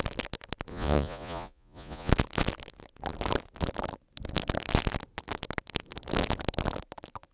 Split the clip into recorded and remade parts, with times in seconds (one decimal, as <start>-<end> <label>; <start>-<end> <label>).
0.0-0.7 recorded; 0.7-2.1 remade; 2.1-7.3 recorded